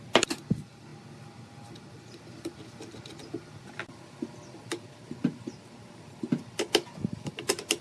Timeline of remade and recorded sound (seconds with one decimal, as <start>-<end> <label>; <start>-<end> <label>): 0.0-7.8 recorded